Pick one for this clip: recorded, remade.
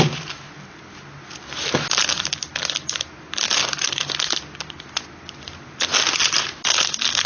recorded